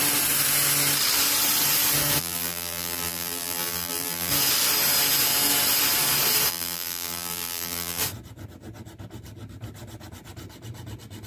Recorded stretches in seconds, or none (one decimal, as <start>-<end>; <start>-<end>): 0.0-2.2; 4.3-6.5; 8.0-11.3